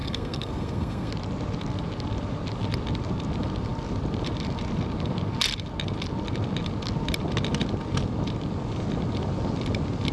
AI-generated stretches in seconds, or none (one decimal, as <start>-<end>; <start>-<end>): 0.0-1.1